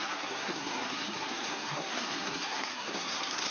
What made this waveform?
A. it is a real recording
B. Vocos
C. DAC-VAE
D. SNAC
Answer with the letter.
D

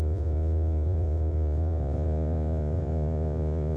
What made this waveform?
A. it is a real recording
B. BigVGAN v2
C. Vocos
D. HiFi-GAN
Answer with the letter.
C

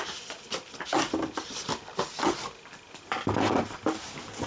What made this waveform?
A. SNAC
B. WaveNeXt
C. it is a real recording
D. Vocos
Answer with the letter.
C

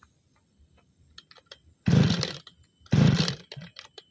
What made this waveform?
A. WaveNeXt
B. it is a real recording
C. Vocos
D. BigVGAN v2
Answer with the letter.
B